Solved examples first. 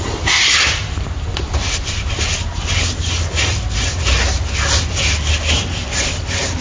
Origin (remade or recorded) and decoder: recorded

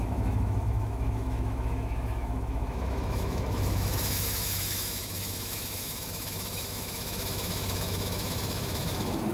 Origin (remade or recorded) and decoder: remade, autoencoder, DAC-VAE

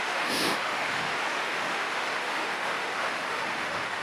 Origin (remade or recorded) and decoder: remade, autoencoder, DAC-VAE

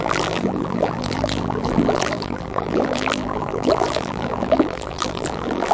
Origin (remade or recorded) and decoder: remade, vocoder, BigVGAN v2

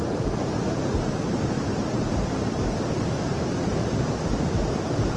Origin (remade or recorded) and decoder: remade, vocoder, BigVGAN v2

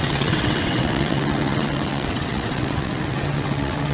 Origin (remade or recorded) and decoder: remade, vocoder, WaveNeXt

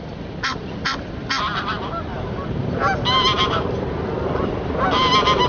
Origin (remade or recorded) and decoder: remade, vocoder, BigVGAN v2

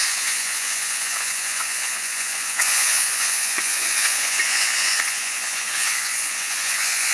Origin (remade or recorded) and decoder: remade, vocoder, Vocos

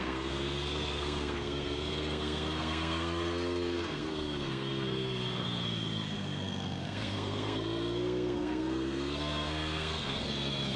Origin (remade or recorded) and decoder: remade, codec, SNAC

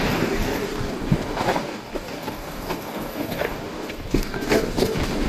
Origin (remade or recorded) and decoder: remade, codec, DAC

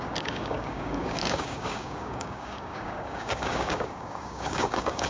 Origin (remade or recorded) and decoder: remade, codec, DAC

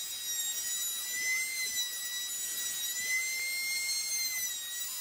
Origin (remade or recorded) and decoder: recorded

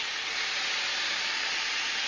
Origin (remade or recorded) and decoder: recorded